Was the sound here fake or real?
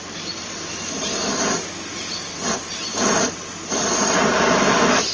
real